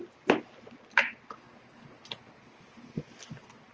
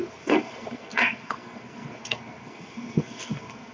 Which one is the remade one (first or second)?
second